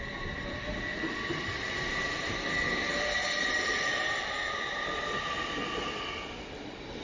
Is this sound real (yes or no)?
yes